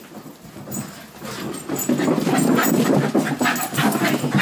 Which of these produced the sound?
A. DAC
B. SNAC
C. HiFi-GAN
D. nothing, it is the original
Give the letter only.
D